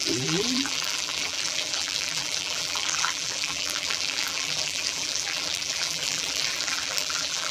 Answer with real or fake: fake